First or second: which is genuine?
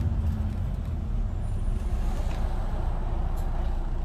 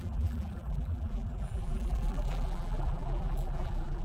first